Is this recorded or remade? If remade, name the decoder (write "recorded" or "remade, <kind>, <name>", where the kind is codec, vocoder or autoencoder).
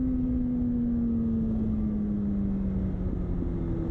recorded